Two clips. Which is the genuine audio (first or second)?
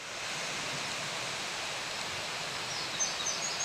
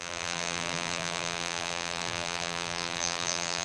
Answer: first